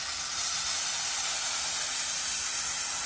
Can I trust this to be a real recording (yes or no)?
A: yes